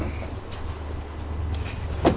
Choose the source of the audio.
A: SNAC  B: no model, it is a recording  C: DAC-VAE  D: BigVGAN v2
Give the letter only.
B